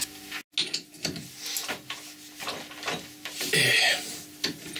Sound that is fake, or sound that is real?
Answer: real